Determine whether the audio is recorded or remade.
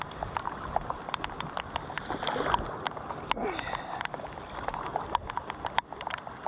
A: recorded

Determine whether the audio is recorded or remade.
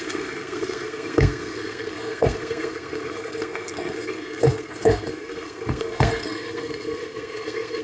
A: remade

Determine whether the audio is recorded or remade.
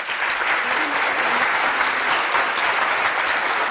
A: recorded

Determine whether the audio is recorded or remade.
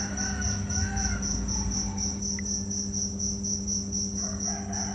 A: recorded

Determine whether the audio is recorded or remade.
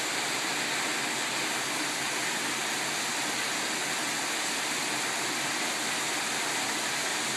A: recorded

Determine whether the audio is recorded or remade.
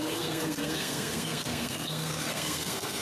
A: remade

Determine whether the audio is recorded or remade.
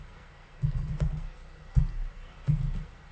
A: remade